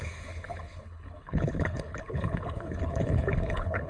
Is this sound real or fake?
fake